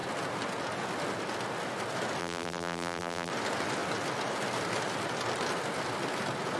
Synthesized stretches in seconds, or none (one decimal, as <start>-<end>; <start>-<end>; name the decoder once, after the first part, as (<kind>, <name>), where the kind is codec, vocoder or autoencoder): 2.2-3.3 (vocoder, BigVGAN v2)